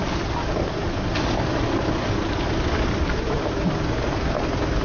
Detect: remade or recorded recorded